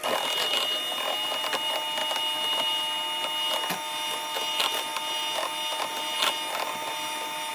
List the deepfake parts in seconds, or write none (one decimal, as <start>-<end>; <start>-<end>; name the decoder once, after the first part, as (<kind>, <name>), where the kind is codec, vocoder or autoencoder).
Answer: none